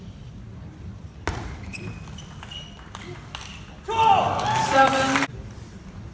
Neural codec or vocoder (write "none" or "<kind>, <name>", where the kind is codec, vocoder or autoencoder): none